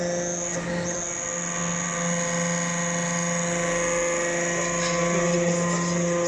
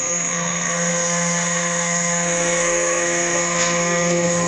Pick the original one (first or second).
first